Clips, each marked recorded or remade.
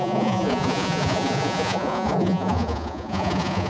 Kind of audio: remade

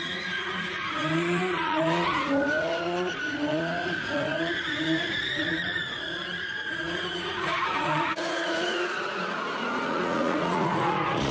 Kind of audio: remade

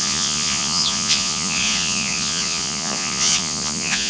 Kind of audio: remade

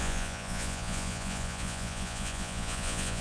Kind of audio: remade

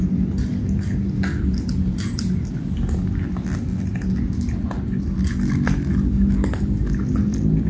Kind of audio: recorded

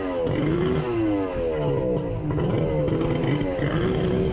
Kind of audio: recorded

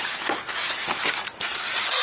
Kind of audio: recorded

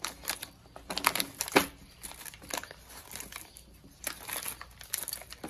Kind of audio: recorded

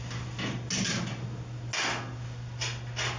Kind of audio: recorded